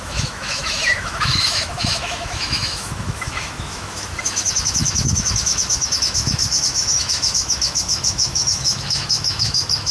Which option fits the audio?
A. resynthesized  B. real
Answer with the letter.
A